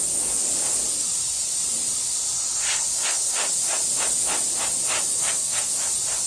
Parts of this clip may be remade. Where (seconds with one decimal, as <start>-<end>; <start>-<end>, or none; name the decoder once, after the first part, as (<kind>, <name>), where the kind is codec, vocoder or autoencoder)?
5.1-5.7 (codec, SNAC)